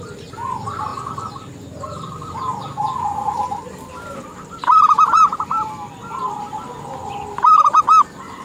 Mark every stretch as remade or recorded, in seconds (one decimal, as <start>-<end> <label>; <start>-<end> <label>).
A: 0.0-5.6 recorded; 5.6-6.6 remade; 6.6-8.4 recorded